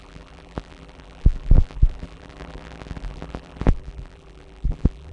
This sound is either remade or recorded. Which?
remade